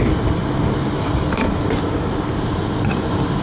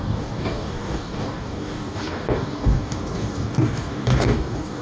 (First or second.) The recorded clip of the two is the first